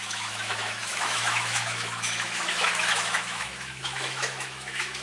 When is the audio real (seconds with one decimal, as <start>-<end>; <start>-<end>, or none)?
none